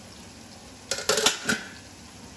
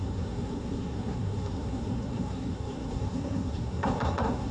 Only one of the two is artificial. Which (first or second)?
second